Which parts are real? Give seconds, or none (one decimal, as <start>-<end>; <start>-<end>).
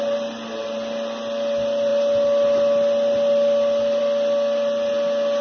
0.0-5.4